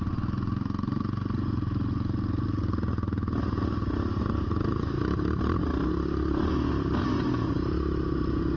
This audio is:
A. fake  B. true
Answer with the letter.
B